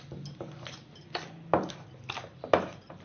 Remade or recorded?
recorded